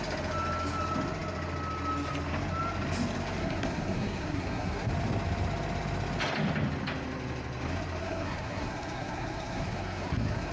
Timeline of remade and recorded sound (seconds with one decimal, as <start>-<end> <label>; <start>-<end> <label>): 0.0-3.4 recorded; 3.4-4.9 remade; 4.9-8.0 recorded; 8.0-10.5 remade